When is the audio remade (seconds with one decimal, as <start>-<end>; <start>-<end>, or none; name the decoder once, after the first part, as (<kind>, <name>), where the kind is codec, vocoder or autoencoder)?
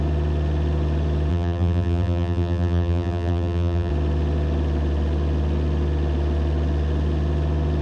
1.3-3.9 (vocoder, BigVGAN v2)